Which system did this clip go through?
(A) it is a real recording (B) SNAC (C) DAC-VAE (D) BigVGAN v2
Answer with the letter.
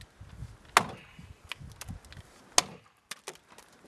A